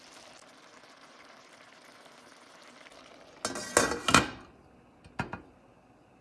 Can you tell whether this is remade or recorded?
recorded